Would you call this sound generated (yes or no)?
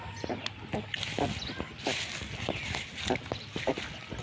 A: no